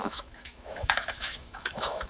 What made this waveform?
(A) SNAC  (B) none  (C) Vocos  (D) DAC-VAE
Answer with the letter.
D